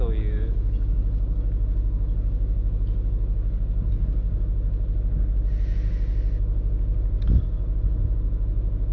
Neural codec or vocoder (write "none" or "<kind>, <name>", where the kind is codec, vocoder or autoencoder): none